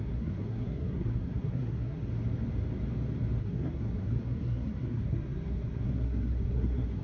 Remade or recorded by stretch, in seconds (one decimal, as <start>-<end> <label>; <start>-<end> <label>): 0.0-2.1 remade; 2.1-3.4 recorded; 3.4-7.0 remade